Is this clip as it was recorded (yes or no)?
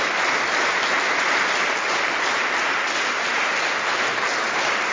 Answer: yes